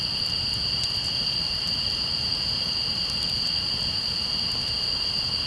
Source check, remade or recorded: recorded